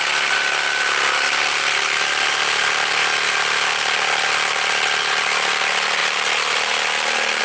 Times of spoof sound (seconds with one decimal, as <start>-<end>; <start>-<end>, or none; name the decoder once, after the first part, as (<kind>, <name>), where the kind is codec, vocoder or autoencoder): none